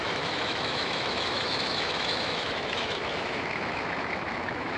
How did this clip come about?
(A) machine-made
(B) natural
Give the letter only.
A